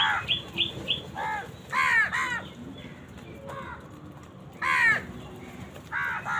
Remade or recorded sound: recorded